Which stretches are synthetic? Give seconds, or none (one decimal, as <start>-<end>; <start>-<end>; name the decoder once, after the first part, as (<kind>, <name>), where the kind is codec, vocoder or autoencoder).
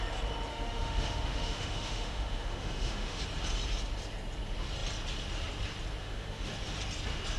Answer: 0.5-3.2 (autoencoder, DAC-VAE); 6.0-6.5